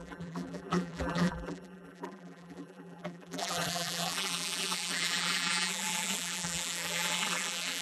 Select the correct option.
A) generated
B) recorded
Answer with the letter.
A